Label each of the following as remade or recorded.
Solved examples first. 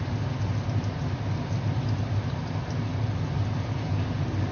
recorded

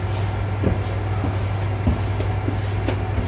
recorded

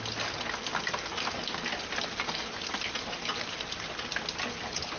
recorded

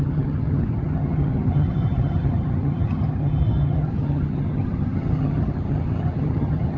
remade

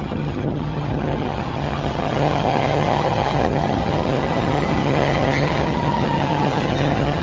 remade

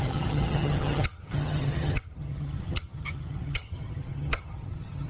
remade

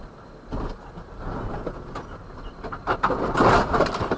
recorded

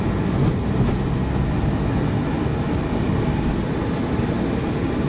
recorded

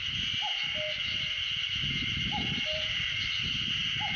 recorded